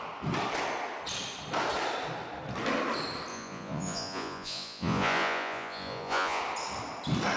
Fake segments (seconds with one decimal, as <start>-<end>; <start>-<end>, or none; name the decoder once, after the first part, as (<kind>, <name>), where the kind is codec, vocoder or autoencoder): 3.3-6.4 (vocoder, Vocos)

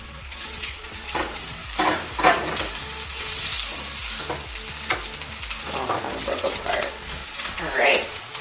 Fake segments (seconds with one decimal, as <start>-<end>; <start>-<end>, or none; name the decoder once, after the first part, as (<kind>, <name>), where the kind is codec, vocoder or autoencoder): 0.0-1.6 (vocoder, WaveNeXt); 3.1-3.5; 6.3-8.4

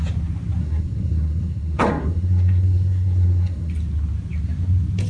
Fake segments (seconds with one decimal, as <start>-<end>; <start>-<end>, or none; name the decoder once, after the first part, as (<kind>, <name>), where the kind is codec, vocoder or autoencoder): 0.6-3.7 (codec, SNAC)

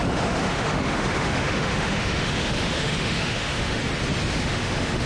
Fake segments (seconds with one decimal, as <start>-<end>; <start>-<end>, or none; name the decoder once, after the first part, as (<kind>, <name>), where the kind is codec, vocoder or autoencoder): 0.0-3.8 (autoencoder, DAC-VAE); 4.3-5.1

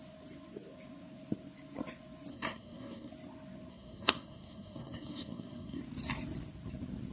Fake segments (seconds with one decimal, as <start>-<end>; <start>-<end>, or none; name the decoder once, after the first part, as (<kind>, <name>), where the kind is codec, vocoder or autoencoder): 2.3-3.1 (codec, SNAC); 3.7-5.8